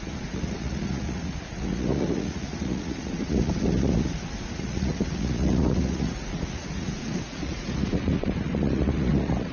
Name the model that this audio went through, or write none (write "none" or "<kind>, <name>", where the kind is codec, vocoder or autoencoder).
vocoder, Vocos